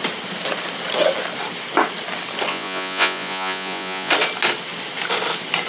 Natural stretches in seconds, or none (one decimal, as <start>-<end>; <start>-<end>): 0.0-2.5; 4.1-5.7